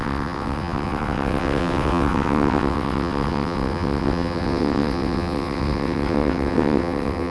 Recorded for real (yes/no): no